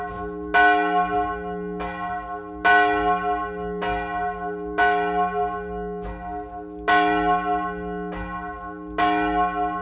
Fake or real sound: real